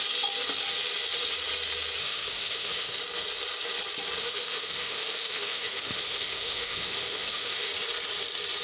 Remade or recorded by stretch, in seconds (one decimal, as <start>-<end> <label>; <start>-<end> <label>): 0.0-2.0 recorded; 2.0-3.0 remade; 3.0-4.2 recorded; 4.2-7.7 remade; 7.7-8.6 recorded